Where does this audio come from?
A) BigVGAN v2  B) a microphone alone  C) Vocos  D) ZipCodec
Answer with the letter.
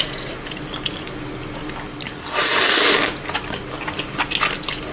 B